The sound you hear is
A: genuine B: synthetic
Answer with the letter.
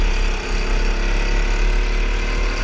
A